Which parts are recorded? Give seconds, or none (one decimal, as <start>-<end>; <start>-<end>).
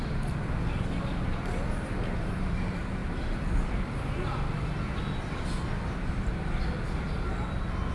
0.0-7.9